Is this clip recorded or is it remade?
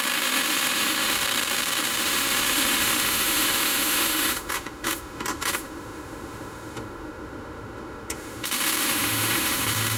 remade